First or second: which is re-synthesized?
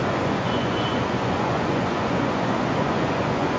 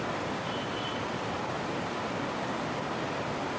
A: first